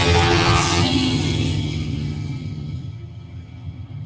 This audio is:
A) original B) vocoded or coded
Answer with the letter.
B